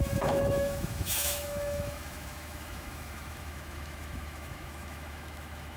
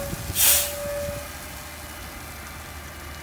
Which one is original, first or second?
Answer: second